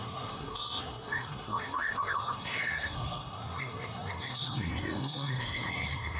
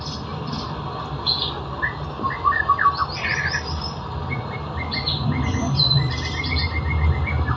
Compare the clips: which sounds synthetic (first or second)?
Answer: first